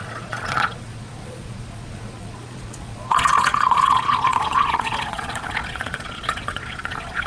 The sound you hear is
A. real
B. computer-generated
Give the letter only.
B